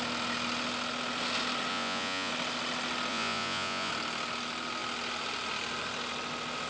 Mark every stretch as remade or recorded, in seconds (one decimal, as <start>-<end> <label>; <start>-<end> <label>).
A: 0.0-1.7 recorded; 1.7-2.3 remade; 2.3-3.1 recorded; 3.1-3.9 remade; 3.9-6.7 recorded